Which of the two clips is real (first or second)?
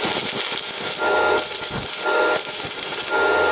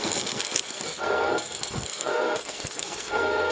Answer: first